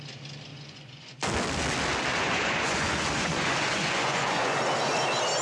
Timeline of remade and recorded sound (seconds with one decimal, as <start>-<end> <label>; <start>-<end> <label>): 0.0-0.5 recorded; 0.5-1.2 remade; 1.2-2.1 recorded; 2.1-4.6 remade; 4.6-5.4 recorded